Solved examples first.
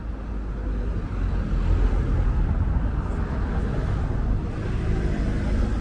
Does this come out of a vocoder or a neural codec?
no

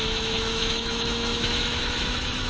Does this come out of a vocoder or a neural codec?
yes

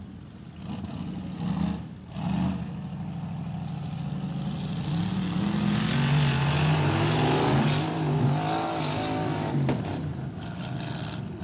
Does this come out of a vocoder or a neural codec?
no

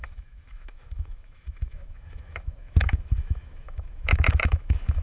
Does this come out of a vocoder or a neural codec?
yes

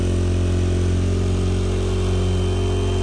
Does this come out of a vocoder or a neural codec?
no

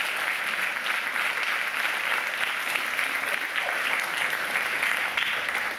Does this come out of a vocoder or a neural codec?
no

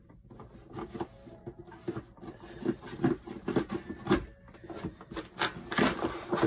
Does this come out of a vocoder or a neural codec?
no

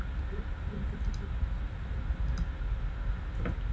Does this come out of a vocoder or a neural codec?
no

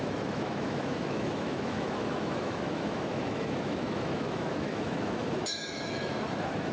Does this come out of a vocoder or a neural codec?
yes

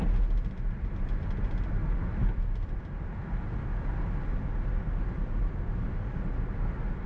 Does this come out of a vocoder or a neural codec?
no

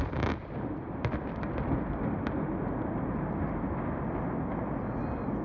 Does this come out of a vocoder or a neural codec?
no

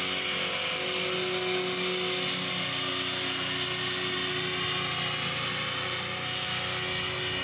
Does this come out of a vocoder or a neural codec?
no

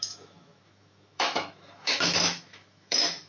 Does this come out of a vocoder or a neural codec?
yes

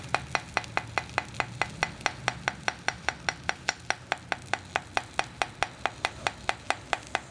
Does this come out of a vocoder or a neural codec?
no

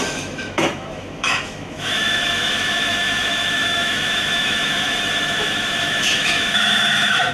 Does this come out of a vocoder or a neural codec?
yes